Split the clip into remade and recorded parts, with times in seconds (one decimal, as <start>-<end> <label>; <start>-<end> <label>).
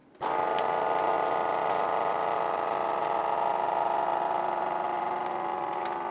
0.0-6.1 recorded